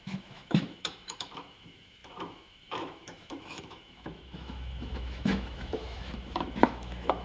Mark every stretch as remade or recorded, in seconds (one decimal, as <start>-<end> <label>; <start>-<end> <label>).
0.0-7.2 remade